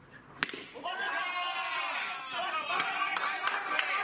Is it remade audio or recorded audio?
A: recorded